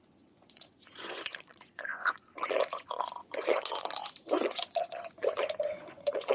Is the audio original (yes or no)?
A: no